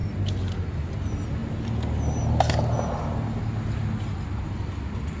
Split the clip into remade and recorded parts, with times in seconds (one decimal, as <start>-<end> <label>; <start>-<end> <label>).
0.0-5.2 recorded